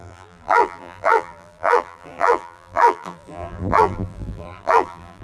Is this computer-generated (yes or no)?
yes